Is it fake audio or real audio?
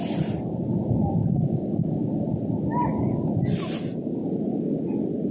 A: real